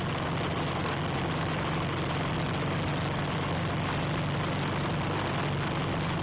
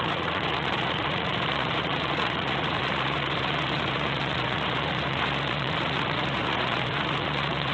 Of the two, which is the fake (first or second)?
second